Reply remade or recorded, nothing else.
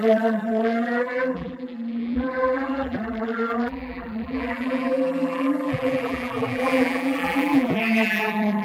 remade